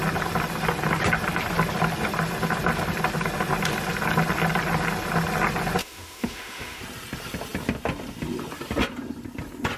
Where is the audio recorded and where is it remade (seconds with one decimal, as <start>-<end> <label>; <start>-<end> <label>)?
0.0-5.8 recorded; 5.8-6.8 remade; 6.8-9.8 recorded